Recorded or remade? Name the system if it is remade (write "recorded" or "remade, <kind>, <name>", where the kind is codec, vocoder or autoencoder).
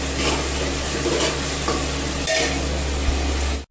recorded